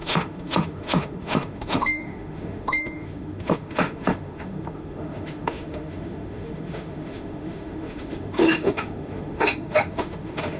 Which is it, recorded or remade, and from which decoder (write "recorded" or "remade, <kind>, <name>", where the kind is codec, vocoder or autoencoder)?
remade, autoencoder, DAC-VAE